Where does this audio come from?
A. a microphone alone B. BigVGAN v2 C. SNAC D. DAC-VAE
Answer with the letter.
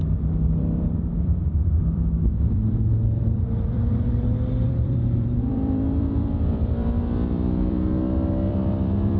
B